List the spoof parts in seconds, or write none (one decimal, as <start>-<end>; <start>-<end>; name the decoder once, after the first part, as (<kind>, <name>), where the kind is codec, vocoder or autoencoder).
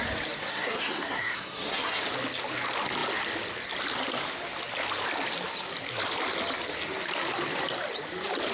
0.4-2.0 (codec, SNAC)